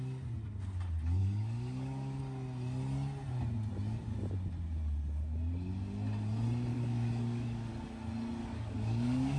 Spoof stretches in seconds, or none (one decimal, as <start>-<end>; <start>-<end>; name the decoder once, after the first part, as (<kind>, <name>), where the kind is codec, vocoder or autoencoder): 1.2-2.2 (codec, DAC); 6.7-7.7; 8.4-9.4